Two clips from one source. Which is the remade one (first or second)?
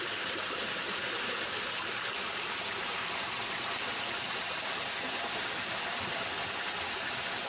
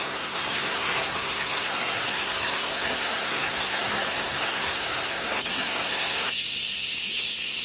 second